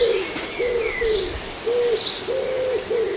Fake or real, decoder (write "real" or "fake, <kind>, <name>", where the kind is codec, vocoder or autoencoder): real